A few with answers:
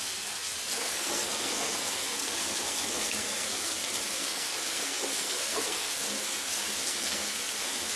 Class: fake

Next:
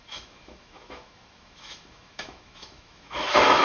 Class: fake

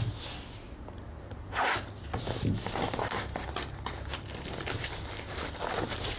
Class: real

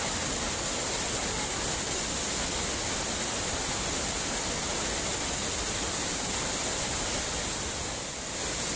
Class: real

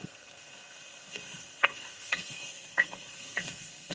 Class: fake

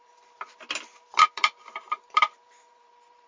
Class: fake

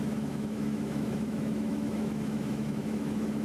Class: fake